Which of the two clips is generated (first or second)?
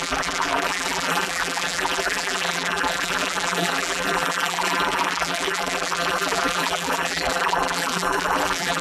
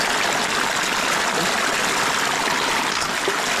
first